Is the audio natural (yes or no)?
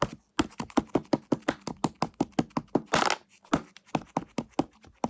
yes